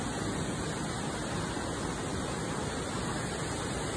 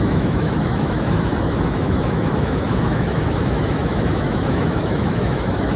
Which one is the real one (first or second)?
first